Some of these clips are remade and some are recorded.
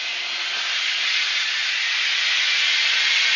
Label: recorded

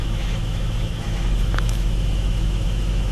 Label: remade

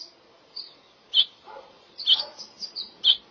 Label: remade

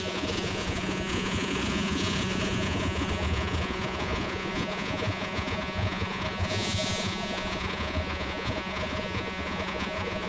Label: remade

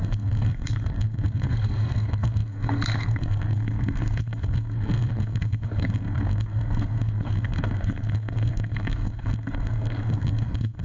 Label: remade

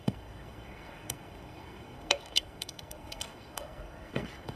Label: remade